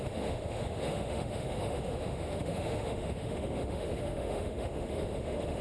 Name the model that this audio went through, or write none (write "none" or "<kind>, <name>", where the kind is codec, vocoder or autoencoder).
autoencoder, DAC-VAE